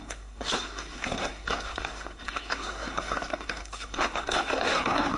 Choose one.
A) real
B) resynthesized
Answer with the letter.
B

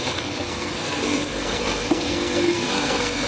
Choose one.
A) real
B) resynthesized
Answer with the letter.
B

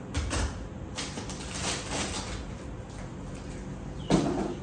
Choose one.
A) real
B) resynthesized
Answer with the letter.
A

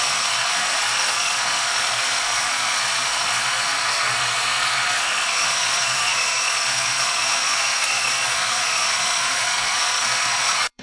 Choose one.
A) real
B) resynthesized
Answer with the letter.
B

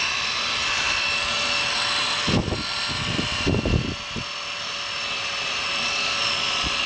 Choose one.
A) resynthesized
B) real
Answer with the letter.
B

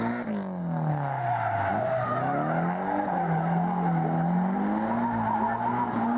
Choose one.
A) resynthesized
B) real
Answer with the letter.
B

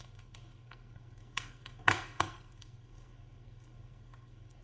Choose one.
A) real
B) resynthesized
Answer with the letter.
B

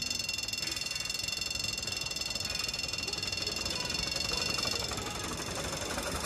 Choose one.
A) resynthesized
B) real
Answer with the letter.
B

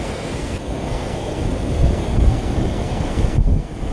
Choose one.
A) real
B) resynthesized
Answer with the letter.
B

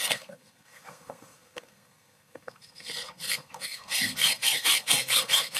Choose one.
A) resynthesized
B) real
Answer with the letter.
A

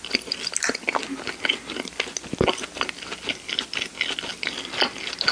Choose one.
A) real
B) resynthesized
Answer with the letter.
A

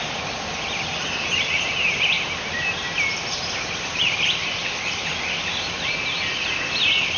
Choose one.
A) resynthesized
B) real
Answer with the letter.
B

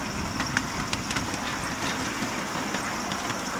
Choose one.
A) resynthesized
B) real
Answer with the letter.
B